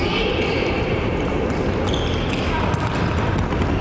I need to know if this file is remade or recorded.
recorded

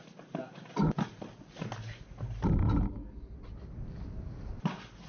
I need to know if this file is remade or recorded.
recorded